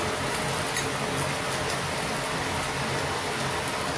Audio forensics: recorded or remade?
recorded